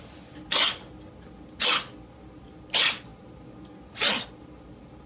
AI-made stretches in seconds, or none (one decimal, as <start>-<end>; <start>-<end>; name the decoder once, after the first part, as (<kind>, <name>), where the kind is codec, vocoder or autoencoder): none